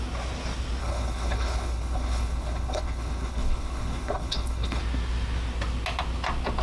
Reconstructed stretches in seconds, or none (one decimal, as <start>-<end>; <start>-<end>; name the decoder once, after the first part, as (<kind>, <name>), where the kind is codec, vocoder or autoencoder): 0.8-4.8 (codec, HILCodec)